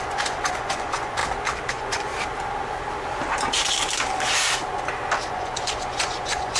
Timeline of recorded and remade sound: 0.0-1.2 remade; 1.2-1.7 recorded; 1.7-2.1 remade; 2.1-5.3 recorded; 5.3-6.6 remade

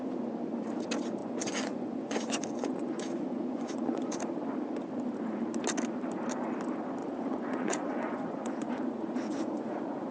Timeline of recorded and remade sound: 0.0-1.2 recorded; 1.2-4.2 remade; 4.2-7.0 recorded; 7.0-10.1 remade

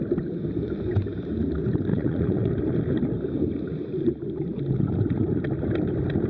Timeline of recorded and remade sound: 0.0-1.9 recorded; 1.9-2.5 remade; 2.5-6.3 recorded

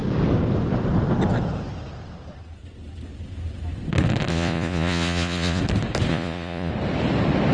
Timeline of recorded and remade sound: 0.0-4.3 recorded; 4.3-5.6 remade; 5.6-6.1 recorded; 6.1-6.7 remade; 6.7-7.5 recorded

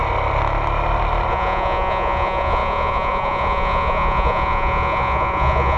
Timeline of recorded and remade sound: 0.0-1.3 recorded; 1.3-5.8 remade